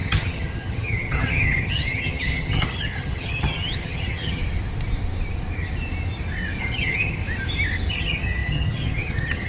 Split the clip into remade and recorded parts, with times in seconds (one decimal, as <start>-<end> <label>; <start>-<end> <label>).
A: 0.0-4.4 remade; 4.4-6.6 recorded; 6.6-7.2 remade; 7.2-7.9 recorded; 7.9-9.5 remade